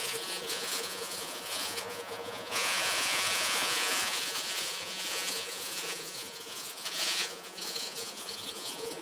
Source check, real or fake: fake